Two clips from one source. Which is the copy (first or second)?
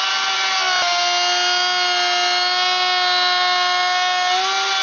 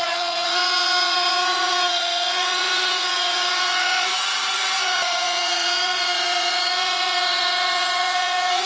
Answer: second